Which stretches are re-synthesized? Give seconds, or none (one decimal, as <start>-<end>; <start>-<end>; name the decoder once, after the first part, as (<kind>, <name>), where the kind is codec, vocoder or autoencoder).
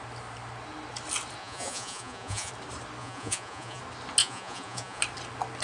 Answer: 1.4-2.5 (vocoder, Vocos); 3.0-3.8; 4.2-5.0